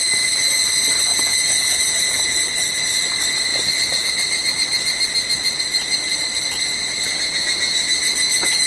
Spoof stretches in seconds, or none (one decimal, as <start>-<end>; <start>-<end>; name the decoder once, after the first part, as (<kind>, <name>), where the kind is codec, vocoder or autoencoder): 1.1-2.4 (vocoder, Vocos)